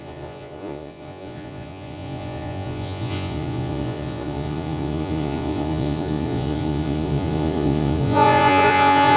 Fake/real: fake